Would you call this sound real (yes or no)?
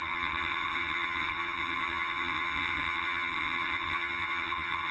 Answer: no